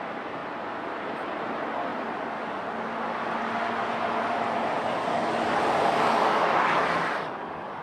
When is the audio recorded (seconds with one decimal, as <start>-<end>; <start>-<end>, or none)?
0.0-5.0